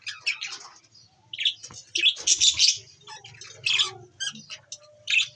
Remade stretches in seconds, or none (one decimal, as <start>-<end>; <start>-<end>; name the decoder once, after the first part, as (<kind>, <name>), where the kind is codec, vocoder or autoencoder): none